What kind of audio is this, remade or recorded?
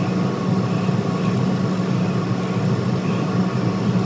recorded